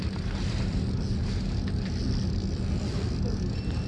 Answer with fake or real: real